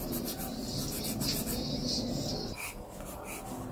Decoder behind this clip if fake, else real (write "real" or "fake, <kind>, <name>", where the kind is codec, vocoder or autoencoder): real